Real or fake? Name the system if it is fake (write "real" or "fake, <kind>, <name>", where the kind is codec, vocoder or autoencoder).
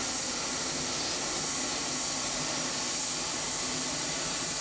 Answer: real